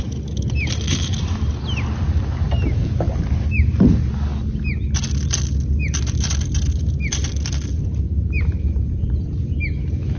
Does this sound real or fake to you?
real